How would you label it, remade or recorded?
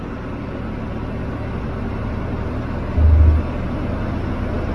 recorded